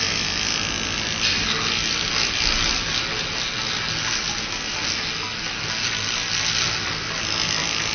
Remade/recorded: recorded